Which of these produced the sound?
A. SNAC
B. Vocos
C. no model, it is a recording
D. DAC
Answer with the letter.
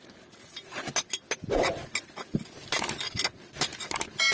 C